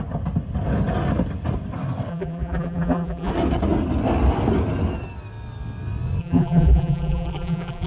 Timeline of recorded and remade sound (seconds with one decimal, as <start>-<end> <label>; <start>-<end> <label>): 0.0-2.1 recorded; 2.1-3.3 remade; 3.3-6.2 recorded; 6.2-7.9 remade